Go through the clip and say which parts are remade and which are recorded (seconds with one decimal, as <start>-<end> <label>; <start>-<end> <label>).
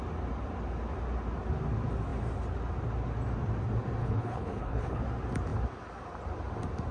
0.0-4.0 recorded; 4.0-5.0 remade; 5.0-6.9 recorded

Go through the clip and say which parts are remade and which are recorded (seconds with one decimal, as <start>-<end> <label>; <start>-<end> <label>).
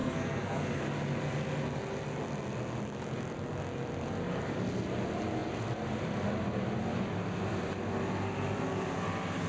0.0-0.8 remade; 0.8-9.5 recorded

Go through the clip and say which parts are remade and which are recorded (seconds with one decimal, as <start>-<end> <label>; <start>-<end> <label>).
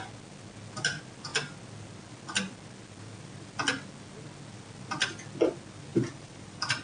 0.0-5.9 recorded; 5.9-6.8 remade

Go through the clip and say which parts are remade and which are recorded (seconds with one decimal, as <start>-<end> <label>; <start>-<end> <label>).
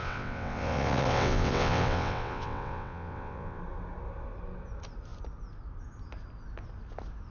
0.0-3.6 remade; 3.6-7.3 recorded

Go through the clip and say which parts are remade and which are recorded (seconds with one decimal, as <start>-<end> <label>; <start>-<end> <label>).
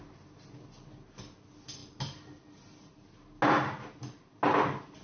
0.0-5.0 recorded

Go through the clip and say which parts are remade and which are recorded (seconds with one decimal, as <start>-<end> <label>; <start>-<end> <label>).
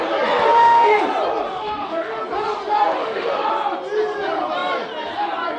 0.0-0.5 recorded; 0.5-1.0 remade; 1.0-1.5 recorded; 1.5-2.2 remade; 2.2-3.0 recorded; 3.0-3.5 remade; 3.5-5.6 recorded